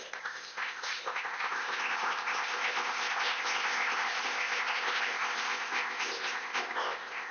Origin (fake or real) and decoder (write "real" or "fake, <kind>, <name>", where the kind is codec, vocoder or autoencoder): fake, codec, ZipCodec